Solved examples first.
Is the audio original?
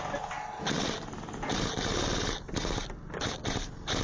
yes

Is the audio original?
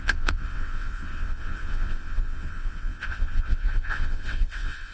no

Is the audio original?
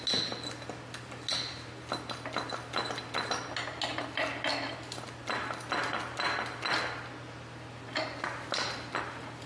yes